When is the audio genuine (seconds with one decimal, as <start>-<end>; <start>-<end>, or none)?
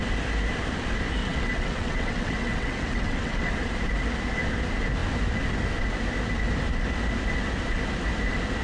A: 0.0-1.2; 3.5-8.6